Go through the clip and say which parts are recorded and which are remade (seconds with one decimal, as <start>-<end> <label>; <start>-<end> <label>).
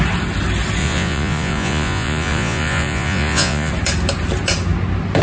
0.0-0.8 recorded; 0.8-3.7 remade; 3.7-5.2 recorded